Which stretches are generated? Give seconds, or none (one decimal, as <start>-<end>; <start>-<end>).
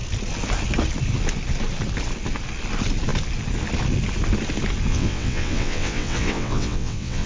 4.9-7.3